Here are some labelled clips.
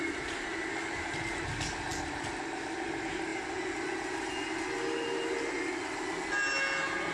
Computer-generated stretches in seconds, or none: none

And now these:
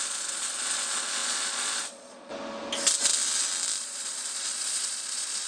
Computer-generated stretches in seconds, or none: 0.0-2.3 (vocoder, Vocos); 3.8-5.5

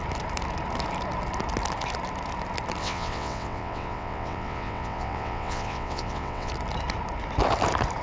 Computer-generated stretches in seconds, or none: 2.8-6.5 (vocoder, WaveNeXt)

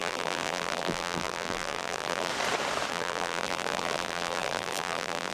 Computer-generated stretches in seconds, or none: 0.0-2.3 (vocoder, BigVGAN v2); 2.9-5.3

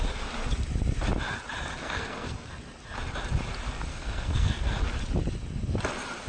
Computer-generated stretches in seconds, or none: 1.8-2.5 (codec, SNAC); 3.9-4.8

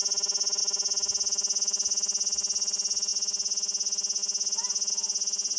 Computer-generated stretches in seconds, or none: none

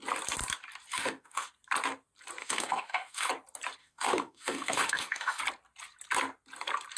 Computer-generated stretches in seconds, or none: 0.9-1.5 (autoencoder, DAC-VAE); 2.4-3.3; 3.8-5.4

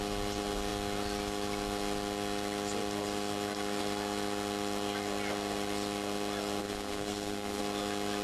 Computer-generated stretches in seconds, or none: 6.6-7.6 (codec, SNAC)